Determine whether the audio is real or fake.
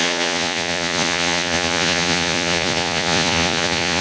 fake